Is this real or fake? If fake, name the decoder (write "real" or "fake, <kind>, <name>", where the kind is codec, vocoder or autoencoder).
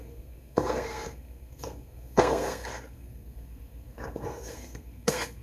fake, codec, SNAC